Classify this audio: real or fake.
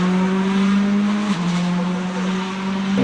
real